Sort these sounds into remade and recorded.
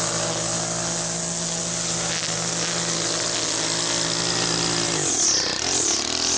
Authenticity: recorded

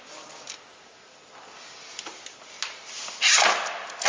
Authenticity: recorded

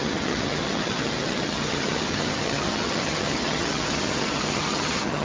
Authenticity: remade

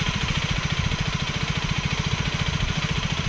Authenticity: recorded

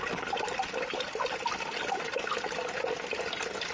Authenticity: recorded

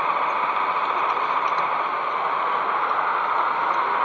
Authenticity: recorded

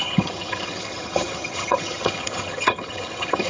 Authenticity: remade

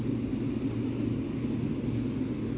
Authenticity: recorded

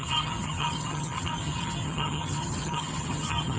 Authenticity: remade